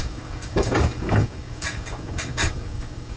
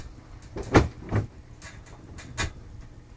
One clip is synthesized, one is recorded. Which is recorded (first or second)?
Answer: second